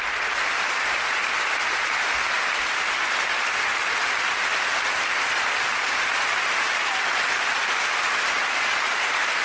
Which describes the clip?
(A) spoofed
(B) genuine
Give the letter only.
B